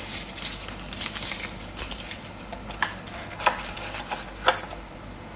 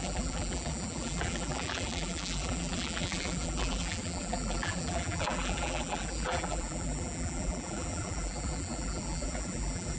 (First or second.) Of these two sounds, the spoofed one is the second